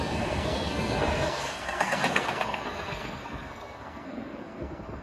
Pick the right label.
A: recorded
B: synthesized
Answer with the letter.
B